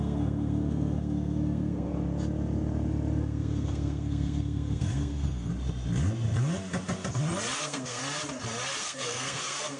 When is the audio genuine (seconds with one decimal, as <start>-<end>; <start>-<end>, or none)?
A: 1.9-3.2; 5.5-7.6; 8.0-8.8